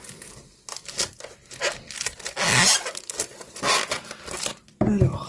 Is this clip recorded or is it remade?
recorded